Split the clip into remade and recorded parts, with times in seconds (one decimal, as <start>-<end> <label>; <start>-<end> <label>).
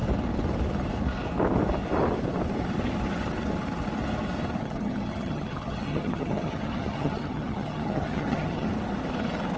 0.0-4.6 recorded; 4.6-8.7 remade; 8.7-9.6 recorded